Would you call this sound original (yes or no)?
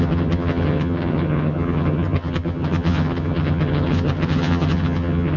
no